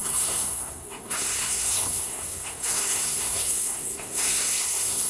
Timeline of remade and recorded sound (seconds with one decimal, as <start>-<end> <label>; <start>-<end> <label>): 0.0-5.1 remade